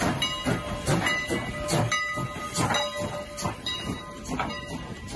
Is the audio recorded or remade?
recorded